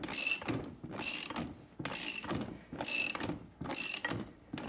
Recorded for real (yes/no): yes